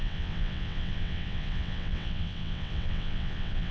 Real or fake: fake